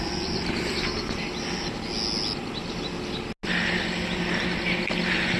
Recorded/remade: recorded